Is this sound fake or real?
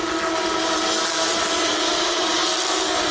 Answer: real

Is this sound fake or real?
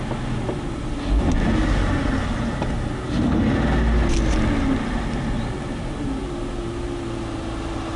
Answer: real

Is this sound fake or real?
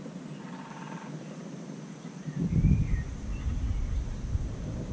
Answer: real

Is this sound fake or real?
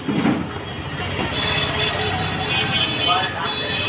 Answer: real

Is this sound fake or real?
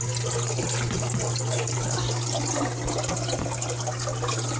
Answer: real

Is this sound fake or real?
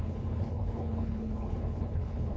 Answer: fake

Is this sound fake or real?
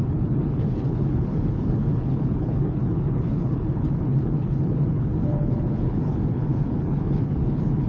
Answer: fake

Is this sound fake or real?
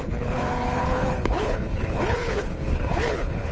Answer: fake